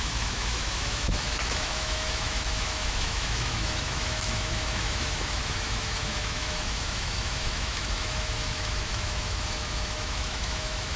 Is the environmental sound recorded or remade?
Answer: remade